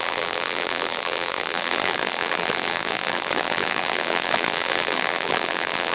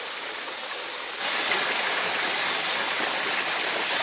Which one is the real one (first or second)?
second